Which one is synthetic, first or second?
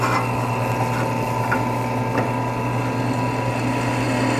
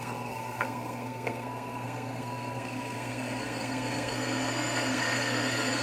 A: second